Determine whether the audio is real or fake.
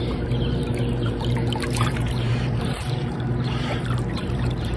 fake